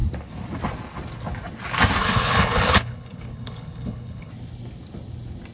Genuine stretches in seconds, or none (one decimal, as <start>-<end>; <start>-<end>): 0.0-2.0; 4.3-5.5

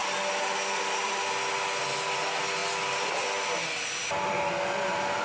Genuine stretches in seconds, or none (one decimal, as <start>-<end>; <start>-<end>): 0.0-5.2

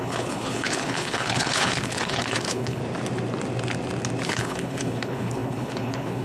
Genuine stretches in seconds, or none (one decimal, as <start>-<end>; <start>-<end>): 2.8-4.3

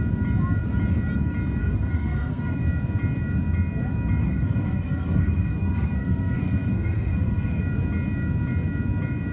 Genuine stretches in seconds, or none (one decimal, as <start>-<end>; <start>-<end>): 0.0-1.6; 2.6-4.2; 7.6-9.3

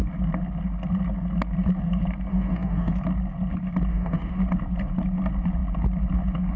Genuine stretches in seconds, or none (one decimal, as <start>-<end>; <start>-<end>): 0.0-2.3; 2.9-3.9; 4.4-6.6

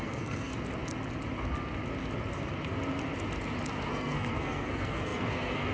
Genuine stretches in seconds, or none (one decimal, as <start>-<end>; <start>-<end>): 0.5-3.9